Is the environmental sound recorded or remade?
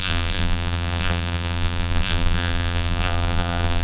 remade